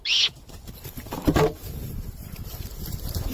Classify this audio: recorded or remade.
recorded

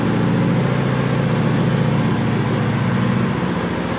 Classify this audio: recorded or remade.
recorded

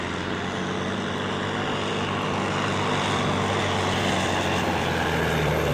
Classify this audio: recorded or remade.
recorded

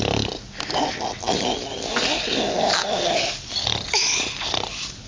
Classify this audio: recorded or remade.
recorded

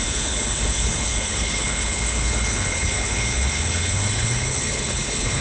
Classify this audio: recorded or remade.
remade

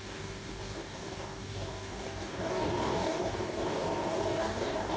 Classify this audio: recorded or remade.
remade